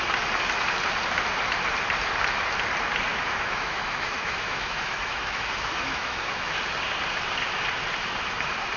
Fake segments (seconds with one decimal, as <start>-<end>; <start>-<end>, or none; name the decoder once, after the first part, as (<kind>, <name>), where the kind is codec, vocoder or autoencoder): 3.1-6.6 (autoencoder, DAC-VAE)